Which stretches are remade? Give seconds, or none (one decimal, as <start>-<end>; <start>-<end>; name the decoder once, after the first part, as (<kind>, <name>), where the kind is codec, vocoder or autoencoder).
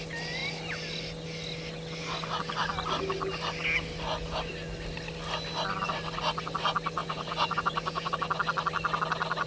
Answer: 7.0-8.1 (vocoder, Vocos)